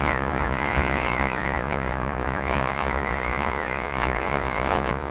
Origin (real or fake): fake